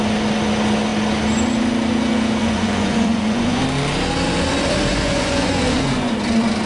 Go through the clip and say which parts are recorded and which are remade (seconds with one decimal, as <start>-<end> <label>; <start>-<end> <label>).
0.0-2.4 recorded; 2.4-3.6 remade; 3.6-4.9 recorded; 4.9-6.1 remade; 6.1-6.7 recorded